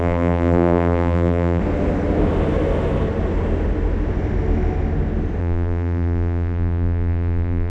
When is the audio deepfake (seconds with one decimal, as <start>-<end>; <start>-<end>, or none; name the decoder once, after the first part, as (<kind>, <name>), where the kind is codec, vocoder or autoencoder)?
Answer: 0.0-1.6 (vocoder, BigVGAN v2); 5.4-7.7